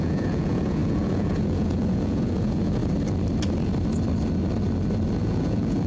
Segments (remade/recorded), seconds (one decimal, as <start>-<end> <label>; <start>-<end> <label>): 0.0-2.8 remade; 2.8-5.2 recorded; 5.2-5.9 remade